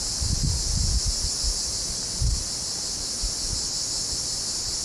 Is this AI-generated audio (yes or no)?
no